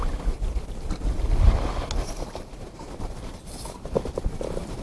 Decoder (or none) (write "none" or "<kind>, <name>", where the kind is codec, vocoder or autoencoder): none